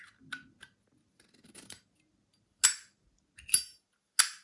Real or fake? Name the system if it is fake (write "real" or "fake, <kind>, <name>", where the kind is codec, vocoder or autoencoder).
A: real